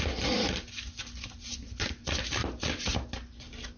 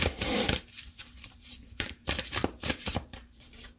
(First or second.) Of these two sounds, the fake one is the second